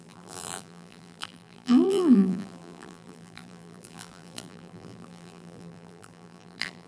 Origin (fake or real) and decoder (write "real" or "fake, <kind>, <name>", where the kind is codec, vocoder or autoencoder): fake, vocoder, BigVGAN v2